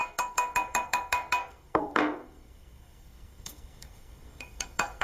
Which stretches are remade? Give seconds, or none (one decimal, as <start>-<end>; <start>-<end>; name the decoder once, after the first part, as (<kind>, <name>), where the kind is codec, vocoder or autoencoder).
0.0-5.0 (codec, SNAC)